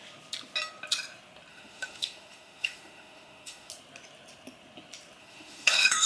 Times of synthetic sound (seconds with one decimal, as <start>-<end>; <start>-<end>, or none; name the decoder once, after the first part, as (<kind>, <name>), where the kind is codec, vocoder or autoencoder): 1.5-3.7 (autoencoder, DAC-VAE); 5.2-6.1